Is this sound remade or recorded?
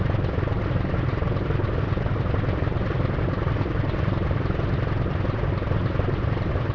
recorded